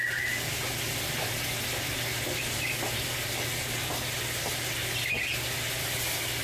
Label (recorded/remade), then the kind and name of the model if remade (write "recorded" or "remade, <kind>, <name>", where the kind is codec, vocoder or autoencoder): recorded